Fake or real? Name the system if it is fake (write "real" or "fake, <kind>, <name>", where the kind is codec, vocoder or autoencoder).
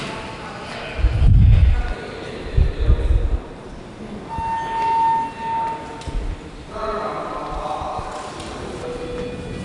real